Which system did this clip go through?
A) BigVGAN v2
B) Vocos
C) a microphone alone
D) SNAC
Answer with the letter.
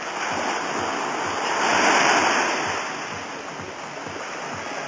C